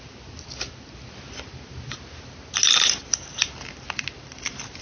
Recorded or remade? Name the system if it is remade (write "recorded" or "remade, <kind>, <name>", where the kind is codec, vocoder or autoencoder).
recorded